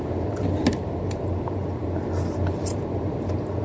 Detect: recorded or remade remade